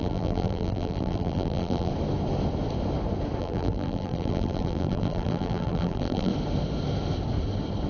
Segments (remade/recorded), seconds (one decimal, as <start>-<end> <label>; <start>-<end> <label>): 0.0-1.9 remade; 1.9-3.4 recorded; 3.4-6.3 remade; 6.3-7.9 recorded